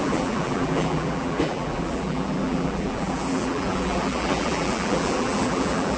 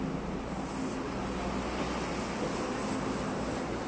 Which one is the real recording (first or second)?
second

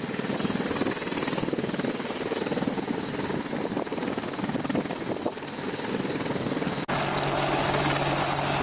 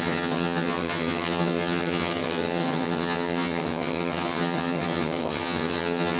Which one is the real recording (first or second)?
first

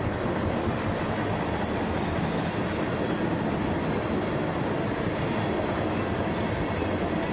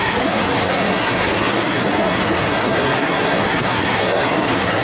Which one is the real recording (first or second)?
first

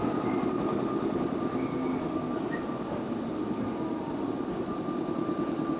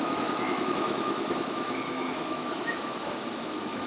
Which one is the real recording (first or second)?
first